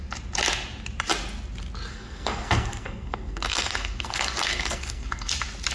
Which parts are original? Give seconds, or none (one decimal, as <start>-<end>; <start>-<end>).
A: 0.0-1.9; 5.3-5.7